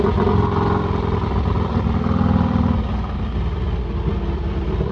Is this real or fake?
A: real